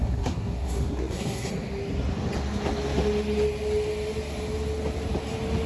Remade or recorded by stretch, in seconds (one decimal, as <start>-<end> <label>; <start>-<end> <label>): 0.0-1.5 remade; 1.5-5.7 recorded